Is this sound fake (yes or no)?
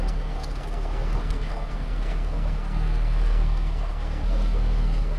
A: yes